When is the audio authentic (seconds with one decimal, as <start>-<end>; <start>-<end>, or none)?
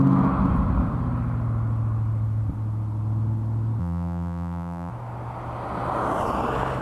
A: 0.0-3.8; 4.9-6.8